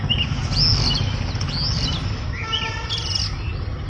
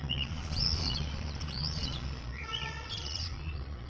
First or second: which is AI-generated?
second